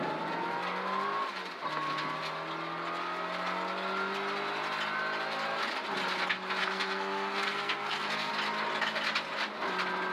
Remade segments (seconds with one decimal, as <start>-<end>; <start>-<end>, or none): 6.6-8.3